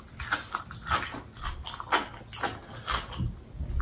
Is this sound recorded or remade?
recorded